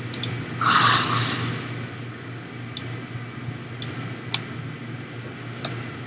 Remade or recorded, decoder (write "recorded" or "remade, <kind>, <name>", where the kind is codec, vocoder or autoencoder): recorded